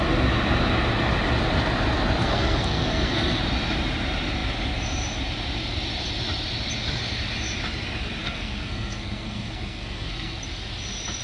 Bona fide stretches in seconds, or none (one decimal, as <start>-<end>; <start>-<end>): 0.0-2.2; 3.4-8.2; 10.4-11.2